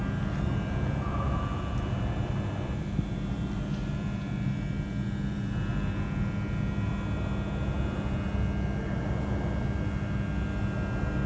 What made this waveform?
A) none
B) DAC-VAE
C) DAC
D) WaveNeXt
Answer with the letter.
A